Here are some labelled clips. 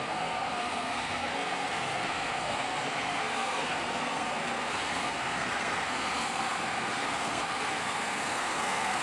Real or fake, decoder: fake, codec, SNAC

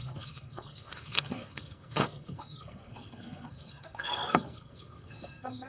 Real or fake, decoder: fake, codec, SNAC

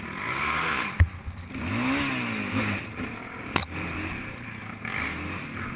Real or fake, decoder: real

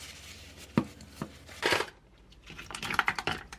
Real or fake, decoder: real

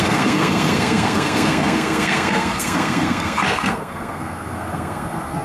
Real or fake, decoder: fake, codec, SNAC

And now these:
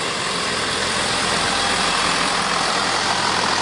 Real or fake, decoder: real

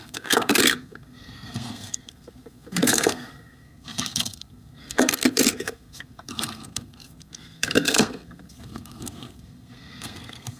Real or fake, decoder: fake, codec, SNAC